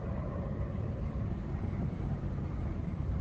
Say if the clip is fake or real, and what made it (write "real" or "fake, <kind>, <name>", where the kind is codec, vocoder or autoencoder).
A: fake, vocoder, BigVGAN v2